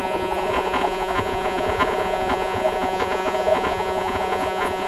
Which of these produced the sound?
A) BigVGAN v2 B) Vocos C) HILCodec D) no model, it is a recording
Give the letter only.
B